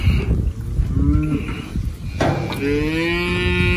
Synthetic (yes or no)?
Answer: no